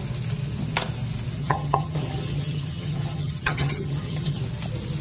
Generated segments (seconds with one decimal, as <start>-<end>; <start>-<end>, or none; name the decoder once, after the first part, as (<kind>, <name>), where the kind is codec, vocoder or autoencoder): 1.4-4.4 (vocoder, HiFi-GAN)